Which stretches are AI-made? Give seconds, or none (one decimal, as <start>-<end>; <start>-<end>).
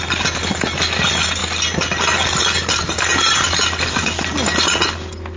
none